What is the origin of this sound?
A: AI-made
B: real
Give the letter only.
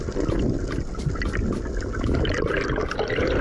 B